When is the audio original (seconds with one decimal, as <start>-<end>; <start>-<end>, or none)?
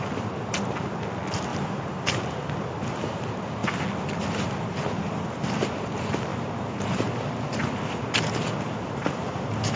0.0-1.5; 2.1-6.3